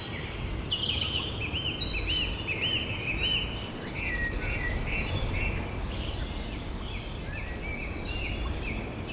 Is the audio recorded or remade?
recorded